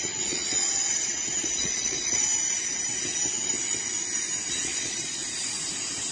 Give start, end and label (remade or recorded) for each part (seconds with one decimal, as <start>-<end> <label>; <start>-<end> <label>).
0.0-2.3 remade; 2.3-4.5 recorded; 4.5-5.2 remade; 5.2-6.1 recorded